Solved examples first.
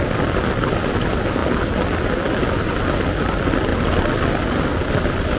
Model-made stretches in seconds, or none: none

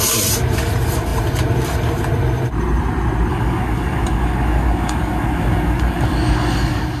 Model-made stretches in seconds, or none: 3.3-7.0 (codec, DAC)

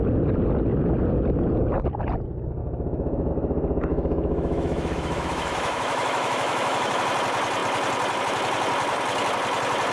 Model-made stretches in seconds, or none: 2.6-3.3 (autoencoder, DAC-VAE); 3.9-7.0